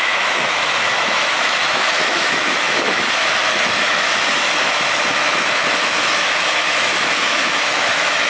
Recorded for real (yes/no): no